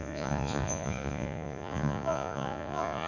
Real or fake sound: fake